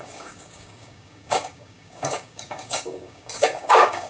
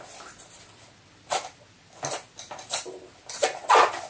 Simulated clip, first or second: first